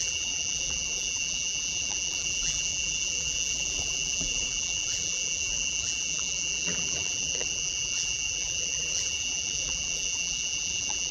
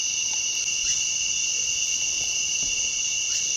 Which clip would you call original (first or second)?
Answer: second